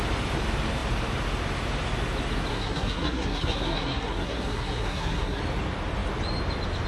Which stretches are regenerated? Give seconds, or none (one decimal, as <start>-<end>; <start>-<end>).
2.5-5.4